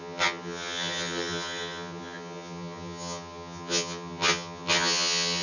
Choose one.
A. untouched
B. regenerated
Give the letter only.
B